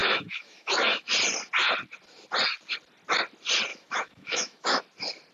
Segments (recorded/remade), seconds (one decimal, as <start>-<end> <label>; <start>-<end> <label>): 0.0-1.1 remade; 1.1-3.7 recorded; 3.7-4.8 remade; 4.8-5.3 recorded